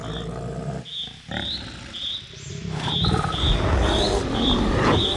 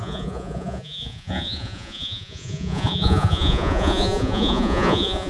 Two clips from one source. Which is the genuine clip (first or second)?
first